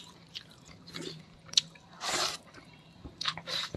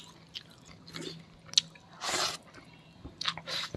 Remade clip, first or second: first